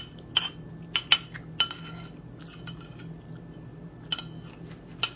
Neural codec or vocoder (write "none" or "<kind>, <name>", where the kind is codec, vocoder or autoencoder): none